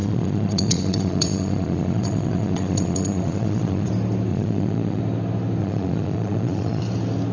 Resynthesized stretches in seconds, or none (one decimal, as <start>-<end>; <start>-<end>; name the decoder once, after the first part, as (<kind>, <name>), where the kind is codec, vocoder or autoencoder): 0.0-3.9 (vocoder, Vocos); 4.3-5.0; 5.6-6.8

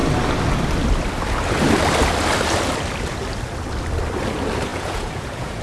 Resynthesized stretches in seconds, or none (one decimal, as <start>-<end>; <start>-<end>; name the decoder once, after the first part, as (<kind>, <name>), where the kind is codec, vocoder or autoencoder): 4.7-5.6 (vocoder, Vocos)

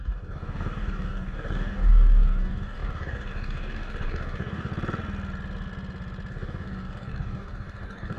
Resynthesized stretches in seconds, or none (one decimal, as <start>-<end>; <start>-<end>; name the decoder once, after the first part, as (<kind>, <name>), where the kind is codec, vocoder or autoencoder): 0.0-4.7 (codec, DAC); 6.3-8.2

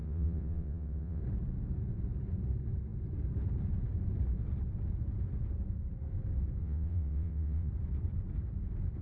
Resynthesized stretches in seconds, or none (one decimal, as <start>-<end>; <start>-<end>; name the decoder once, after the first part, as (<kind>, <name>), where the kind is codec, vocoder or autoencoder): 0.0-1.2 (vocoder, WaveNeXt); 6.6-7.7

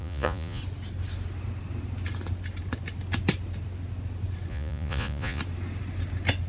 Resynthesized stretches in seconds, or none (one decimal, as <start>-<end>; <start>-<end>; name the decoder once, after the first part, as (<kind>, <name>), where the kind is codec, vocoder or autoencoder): 0.0-0.6 (vocoder, Vocos); 4.5-5.4

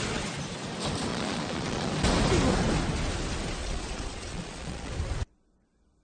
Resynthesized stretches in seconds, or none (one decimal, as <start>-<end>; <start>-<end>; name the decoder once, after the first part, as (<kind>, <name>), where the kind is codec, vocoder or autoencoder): 1.1-1.9 (vocoder, Vocos); 3.6-4.9

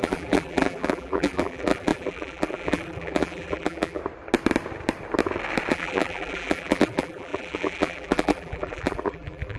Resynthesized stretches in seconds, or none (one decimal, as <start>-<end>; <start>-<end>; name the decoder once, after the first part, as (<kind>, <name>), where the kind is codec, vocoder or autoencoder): 0.0-4.0 (vocoder, BigVGAN v2); 5.7-9.6

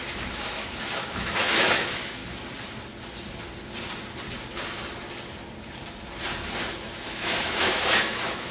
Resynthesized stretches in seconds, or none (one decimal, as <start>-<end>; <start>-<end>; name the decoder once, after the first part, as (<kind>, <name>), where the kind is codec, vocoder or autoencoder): 0.0-2.2 (autoencoder, DAC-VAE); 6.7-8.5